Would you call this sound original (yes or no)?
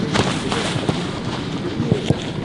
yes